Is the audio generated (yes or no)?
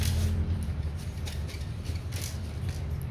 no